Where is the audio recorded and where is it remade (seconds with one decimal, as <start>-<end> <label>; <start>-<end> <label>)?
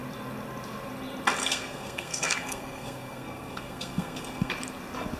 0.0-1.4 recorded; 1.4-4.5 remade; 4.5-5.2 recorded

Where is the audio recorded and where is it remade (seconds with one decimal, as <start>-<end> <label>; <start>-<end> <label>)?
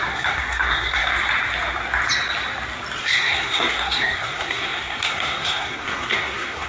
0.0-1.1 remade; 1.1-3.0 recorded; 3.0-6.7 remade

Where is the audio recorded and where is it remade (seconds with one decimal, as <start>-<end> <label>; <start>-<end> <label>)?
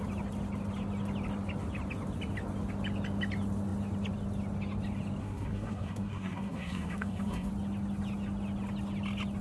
0.0-5.2 recorded; 5.2-7.5 remade; 7.5-9.4 recorded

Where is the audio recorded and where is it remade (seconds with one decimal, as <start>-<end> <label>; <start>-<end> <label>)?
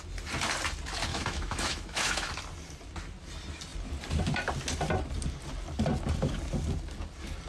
0.0-1.1 recorded; 1.1-2.3 remade; 2.3-7.5 recorded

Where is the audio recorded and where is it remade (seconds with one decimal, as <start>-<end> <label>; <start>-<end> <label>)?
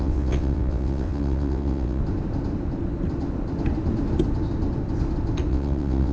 0.0-2.0 remade; 2.0-5.5 recorded; 5.5-6.1 remade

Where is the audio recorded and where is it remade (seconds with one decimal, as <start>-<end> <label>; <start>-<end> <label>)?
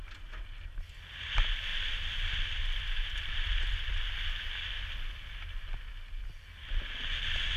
0.0-7.6 recorded